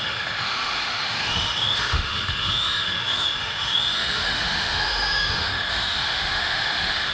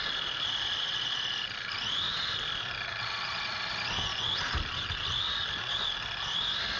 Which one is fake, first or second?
first